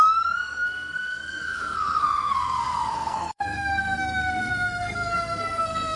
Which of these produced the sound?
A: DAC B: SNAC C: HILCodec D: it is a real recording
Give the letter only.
B